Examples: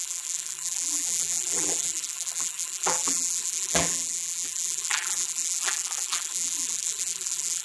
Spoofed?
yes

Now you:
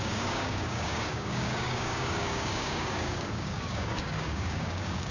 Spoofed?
yes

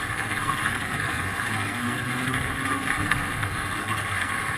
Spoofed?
yes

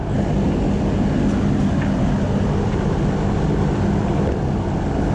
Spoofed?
no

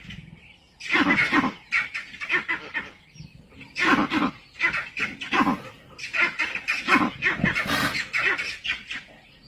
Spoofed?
no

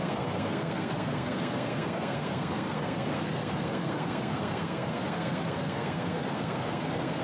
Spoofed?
yes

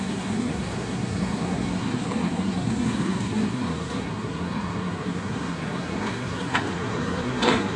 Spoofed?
yes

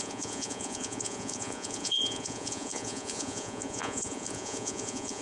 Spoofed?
yes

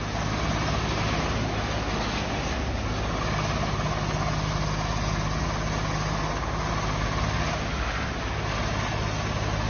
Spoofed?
no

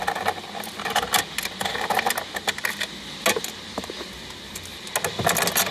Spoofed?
no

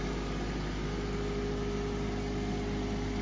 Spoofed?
no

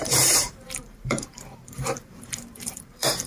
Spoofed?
yes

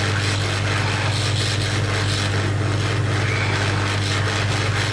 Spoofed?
no